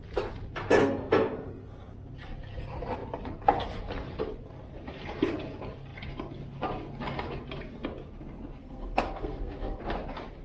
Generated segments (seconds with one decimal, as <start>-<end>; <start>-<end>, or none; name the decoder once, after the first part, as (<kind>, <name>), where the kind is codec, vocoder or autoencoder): 0.8-1.5 (codec, SNAC); 8.6-9.8